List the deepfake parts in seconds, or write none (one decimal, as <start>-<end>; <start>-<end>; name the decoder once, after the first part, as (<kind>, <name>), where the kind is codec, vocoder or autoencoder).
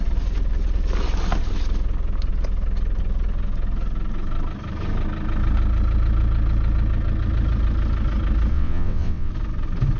8.5-9.3 (vocoder, WaveNeXt)